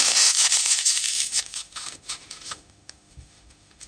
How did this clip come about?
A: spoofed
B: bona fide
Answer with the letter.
A